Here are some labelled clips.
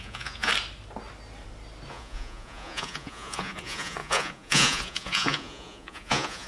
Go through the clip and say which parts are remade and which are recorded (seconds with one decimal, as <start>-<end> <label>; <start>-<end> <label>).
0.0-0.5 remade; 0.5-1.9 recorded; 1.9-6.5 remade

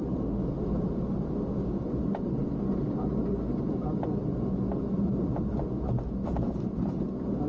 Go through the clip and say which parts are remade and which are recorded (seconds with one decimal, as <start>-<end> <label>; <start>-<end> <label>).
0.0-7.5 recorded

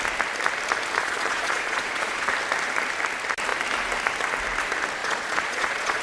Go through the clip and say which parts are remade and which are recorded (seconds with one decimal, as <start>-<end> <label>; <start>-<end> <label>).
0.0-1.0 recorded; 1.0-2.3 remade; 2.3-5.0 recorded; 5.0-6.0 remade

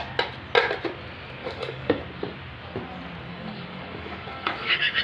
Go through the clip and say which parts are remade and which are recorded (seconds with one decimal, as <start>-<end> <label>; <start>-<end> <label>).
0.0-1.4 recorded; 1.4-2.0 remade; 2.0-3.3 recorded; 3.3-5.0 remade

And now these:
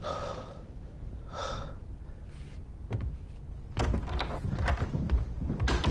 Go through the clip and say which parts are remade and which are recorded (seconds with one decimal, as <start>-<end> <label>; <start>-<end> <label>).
0.0-5.9 recorded

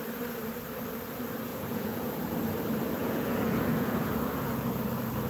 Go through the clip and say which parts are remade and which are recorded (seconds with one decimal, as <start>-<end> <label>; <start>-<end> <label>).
0.0-1.5 recorded; 1.5-2.1 remade; 2.1-3.0 recorded; 3.0-4.1 remade; 4.1-5.3 recorded

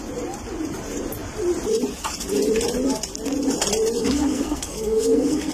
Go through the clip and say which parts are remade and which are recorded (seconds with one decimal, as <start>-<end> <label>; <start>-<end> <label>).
0.0-4.0 recorded; 4.0-5.5 remade

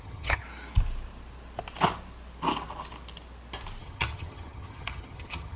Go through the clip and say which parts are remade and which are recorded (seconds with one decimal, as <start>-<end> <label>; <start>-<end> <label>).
0.0-0.4 remade; 0.4-3.8 recorded; 3.8-5.6 remade